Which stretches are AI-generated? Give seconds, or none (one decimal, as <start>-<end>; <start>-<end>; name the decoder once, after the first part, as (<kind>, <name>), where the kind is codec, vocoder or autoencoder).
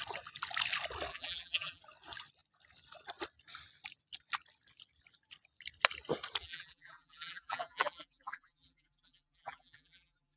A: 1.1-1.8 (vocoder, BigVGAN v2); 6.4-10.4